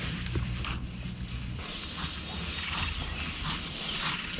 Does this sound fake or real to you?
real